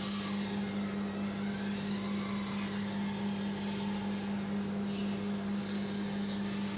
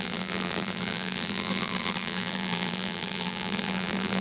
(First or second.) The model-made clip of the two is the second